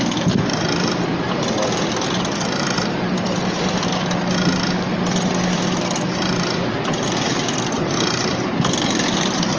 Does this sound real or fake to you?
real